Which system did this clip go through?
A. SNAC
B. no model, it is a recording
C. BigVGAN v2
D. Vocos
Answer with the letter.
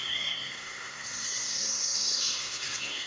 A